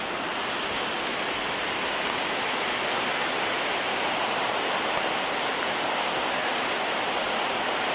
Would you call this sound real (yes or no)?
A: yes